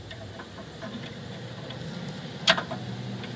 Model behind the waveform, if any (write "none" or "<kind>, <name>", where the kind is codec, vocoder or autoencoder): vocoder, BigVGAN v2